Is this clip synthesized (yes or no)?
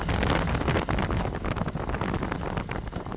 no